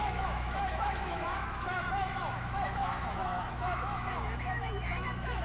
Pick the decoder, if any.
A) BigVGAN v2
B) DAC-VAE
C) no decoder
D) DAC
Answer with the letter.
B